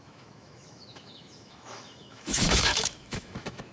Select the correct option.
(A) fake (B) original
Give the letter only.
A